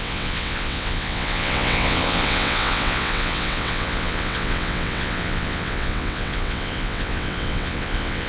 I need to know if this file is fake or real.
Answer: fake